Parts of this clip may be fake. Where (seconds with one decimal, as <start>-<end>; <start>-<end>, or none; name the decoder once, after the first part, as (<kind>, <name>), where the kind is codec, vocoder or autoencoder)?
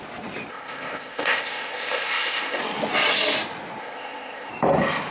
0.5-2.6 (codec, ZipCodec); 3.8-4.5